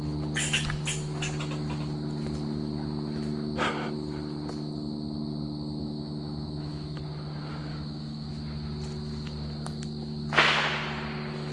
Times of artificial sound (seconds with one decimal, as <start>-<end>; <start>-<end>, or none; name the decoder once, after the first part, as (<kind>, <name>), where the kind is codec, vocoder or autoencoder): 5.8-7.0 (autoencoder, DAC-VAE); 7.7-8.3